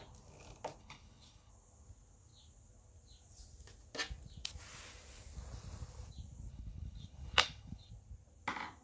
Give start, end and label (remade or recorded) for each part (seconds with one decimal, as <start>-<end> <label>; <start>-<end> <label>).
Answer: 0.0-0.8 recorded; 0.8-1.5 remade; 1.5-6.5 recorded; 6.5-7.9 remade; 7.9-8.8 recorded